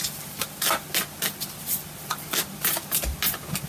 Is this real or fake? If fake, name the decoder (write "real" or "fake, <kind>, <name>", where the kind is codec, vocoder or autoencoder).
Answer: real